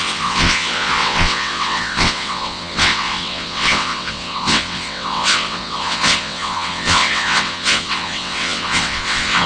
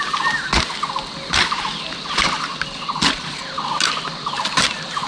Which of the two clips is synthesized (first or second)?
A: first